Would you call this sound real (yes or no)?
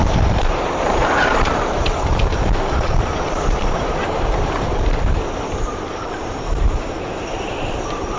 no